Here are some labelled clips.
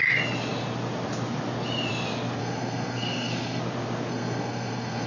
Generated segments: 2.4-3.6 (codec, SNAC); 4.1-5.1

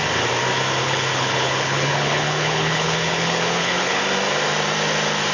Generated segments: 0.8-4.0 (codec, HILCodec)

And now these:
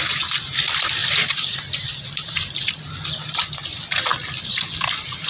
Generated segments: 1.0-2.5 (vocoder, BigVGAN v2)